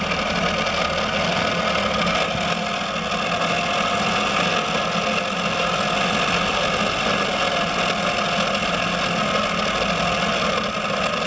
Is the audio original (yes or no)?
yes